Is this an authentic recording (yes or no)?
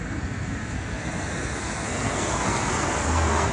no